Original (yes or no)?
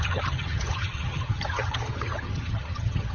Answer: no